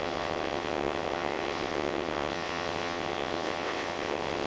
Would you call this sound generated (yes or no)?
yes